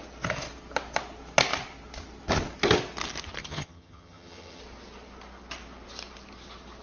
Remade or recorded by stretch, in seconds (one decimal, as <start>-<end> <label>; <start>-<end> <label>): 0.0-3.4 recorded; 3.4-4.6 remade; 4.6-6.8 recorded